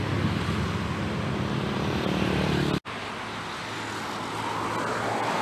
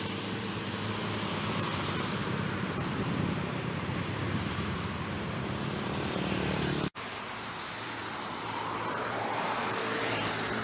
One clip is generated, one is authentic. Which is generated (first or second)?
second